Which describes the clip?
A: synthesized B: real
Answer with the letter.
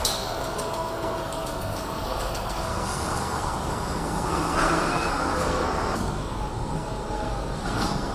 A